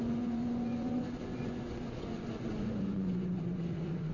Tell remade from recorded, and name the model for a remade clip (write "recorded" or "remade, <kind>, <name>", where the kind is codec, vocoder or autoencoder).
remade, vocoder, Vocos